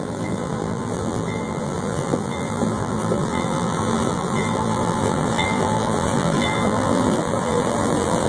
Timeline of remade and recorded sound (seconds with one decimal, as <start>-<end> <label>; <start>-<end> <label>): 0.0-8.3 remade